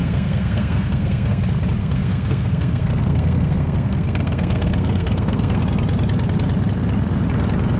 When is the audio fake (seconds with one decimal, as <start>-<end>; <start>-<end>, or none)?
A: 0.0-1.4; 1.8-5.6